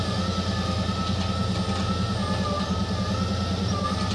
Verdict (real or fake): real